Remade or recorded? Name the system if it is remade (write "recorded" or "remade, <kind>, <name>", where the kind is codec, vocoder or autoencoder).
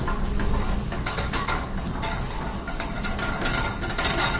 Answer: remade, codec, DAC